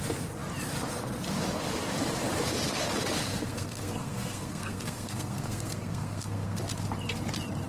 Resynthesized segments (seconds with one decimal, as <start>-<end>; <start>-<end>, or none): 3.2-6.6